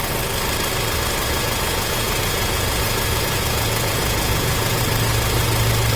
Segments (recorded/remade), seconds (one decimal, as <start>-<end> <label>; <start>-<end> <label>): 0.0-1.2 recorded; 1.2-4.8 remade; 4.8-6.0 recorded